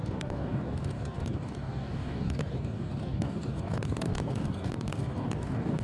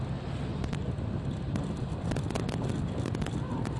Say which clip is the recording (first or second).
second